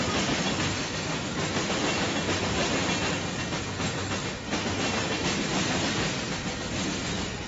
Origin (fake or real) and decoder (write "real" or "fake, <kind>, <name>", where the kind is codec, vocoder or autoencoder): real